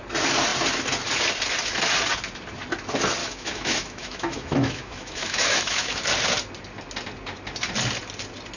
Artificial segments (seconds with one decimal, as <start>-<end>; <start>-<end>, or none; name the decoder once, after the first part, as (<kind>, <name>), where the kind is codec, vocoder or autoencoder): 3.2-6.0 (autoencoder, DAC-VAE)